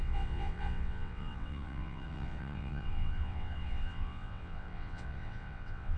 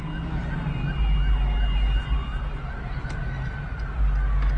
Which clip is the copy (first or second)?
first